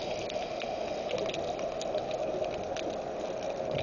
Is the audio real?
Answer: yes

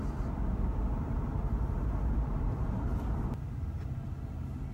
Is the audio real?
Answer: yes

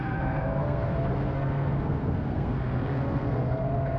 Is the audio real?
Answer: no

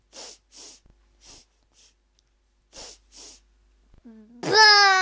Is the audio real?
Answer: yes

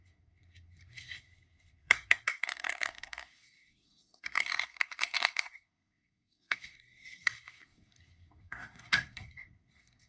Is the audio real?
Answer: no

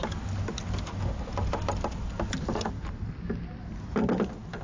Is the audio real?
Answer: yes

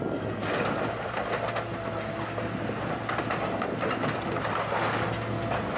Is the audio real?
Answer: yes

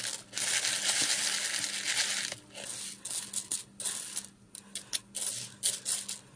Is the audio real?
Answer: yes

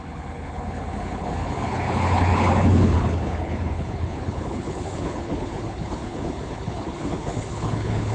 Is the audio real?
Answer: no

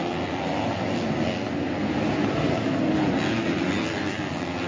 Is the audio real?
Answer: yes